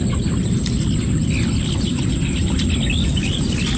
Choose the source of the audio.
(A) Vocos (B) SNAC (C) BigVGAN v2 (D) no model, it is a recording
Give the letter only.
D